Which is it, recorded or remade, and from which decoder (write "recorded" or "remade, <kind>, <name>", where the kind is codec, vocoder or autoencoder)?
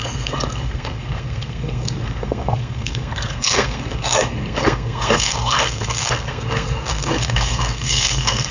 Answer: remade, codec, SNAC